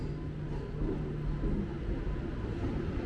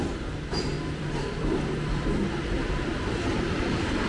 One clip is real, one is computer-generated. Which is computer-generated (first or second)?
second